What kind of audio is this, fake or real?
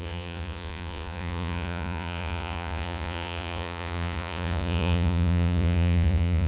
fake